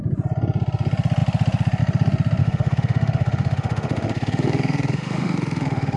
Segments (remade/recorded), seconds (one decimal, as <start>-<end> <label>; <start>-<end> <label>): 0.0-2.4 recorded; 2.4-6.0 remade